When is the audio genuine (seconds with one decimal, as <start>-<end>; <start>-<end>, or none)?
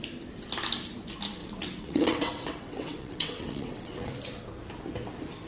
0.0-1.4; 4.1-5.5